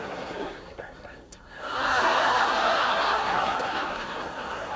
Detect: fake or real fake